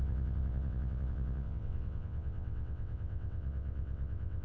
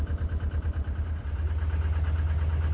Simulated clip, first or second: first